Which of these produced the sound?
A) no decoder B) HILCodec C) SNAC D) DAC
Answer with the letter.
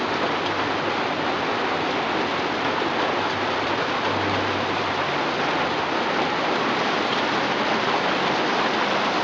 A